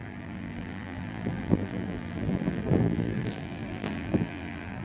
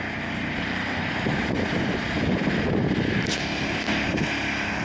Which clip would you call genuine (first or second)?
second